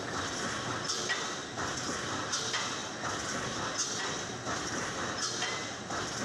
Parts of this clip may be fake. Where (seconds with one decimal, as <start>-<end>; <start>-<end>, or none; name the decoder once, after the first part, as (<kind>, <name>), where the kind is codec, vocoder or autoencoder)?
0.9-1.7 (vocoder, BigVGAN v2)